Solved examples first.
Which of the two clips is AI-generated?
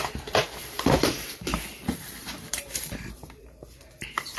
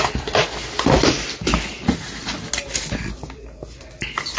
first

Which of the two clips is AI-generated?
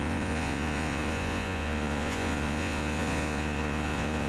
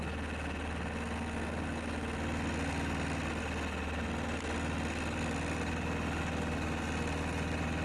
first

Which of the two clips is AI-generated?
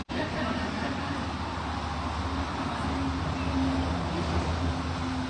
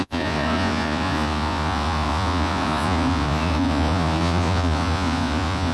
second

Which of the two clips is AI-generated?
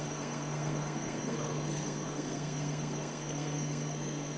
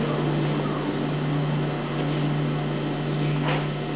first